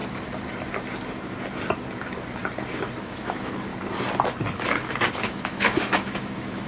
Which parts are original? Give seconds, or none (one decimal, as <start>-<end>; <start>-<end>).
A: 0.0-3.0; 3.7-5.2